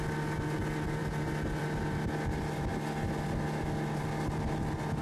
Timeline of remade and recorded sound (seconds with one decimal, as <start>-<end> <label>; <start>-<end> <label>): 0.0-5.0 recorded